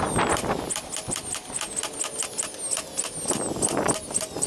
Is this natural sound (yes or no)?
yes